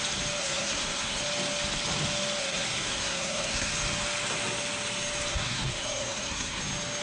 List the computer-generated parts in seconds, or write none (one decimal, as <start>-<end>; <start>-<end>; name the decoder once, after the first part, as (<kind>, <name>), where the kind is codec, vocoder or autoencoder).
0.4-1.2 (codec, SNAC); 2.4-3.7; 5.3-6.6